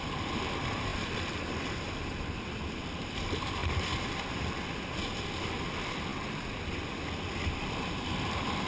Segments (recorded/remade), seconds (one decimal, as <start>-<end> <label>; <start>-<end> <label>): 0.0-3.6 remade; 3.6-5.6 recorded; 5.6-6.1 remade; 6.1-7.4 recorded; 7.4-8.7 remade